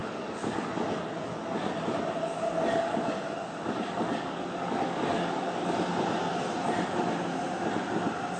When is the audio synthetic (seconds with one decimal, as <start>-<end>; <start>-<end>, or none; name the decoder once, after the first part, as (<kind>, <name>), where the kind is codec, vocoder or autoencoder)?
0.0-0.7 (codec, DAC); 2.2-5.7